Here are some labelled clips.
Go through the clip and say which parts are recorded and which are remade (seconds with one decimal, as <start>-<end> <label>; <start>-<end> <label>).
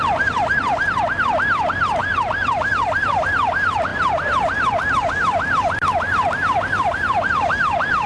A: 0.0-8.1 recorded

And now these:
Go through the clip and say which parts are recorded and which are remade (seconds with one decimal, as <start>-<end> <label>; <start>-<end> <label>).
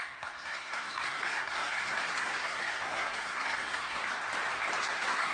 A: 0.0-4.0 remade; 4.0-4.8 recorded; 4.8-5.3 remade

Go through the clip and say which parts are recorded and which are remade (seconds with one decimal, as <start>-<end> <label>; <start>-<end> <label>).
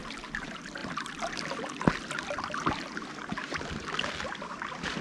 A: 0.0-5.0 recorded